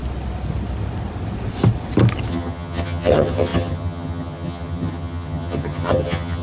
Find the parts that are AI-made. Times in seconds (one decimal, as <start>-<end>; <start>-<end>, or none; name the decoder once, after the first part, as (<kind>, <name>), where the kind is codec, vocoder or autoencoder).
2.3-6.4 (vocoder, HiFi-GAN)